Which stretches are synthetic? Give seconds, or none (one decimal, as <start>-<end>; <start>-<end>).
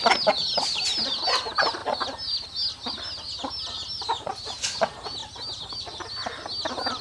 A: none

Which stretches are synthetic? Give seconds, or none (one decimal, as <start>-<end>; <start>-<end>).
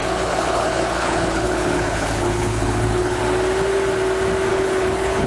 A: 0.0-3.2; 4.5-5.3